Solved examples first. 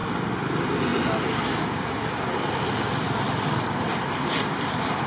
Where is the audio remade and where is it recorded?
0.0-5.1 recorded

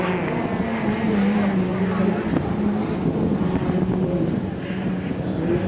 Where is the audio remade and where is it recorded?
0.0-5.7 recorded

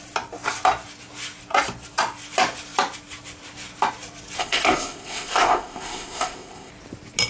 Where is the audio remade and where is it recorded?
0.0-4.4 recorded; 4.4-6.7 remade; 6.7-7.3 recorded

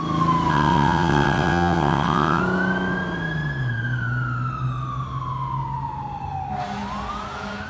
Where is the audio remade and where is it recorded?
0.0-0.5 recorded; 0.5-2.4 remade; 2.4-7.7 recorded

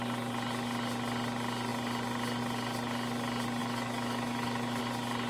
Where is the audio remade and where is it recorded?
0.0-3.6 recorded; 3.6-4.8 remade; 4.8-5.3 recorded

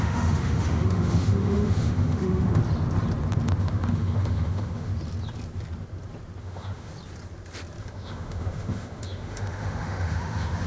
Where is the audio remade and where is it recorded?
0.0-2.6 remade; 2.6-3.6 recorded; 3.6-4.9 remade; 4.9-6.4 recorded; 6.4-6.9 remade; 6.9-7.8 recorded; 7.8-10.7 remade

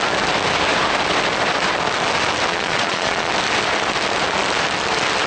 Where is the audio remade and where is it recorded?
0.0-2.5 recorded; 2.5-3.3 remade; 3.3-5.3 recorded